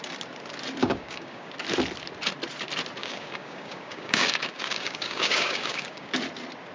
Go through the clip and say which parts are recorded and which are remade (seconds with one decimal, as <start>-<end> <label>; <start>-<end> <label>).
0.0-0.8 recorded; 0.8-1.5 remade; 1.5-3.0 recorded; 3.0-6.1 remade; 6.1-6.7 recorded